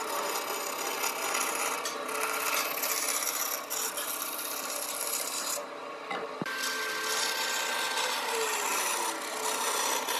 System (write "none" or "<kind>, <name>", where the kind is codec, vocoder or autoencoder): none